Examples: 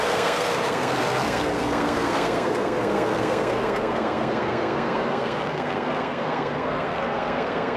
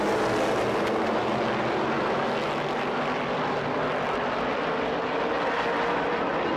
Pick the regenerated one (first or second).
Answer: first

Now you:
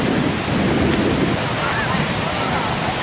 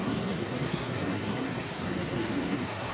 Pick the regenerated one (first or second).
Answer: second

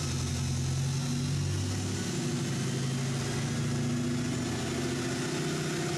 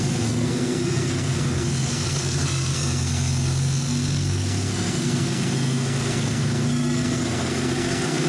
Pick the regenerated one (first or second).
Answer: second